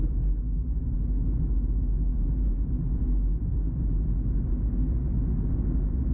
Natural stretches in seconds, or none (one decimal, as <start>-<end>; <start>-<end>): 0.0-6.1